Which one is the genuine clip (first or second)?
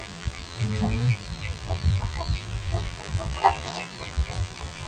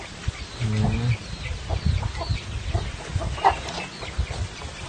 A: second